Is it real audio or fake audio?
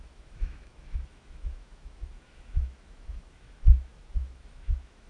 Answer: fake